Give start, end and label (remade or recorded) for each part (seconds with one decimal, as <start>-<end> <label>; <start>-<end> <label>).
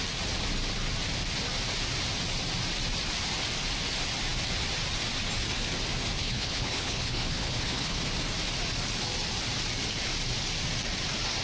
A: 0.0-6.2 recorded; 6.2-8.0 remade; 8.0-11.4 recorded